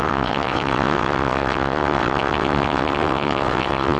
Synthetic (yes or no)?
yes